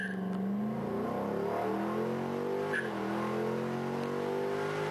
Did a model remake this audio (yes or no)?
no